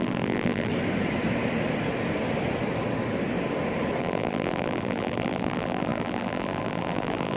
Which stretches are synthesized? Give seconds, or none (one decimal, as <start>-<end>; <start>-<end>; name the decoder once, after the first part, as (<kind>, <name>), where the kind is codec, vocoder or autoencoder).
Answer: 0.0-0.7 (vocoder, BigVGAN v2); 4.0-7.4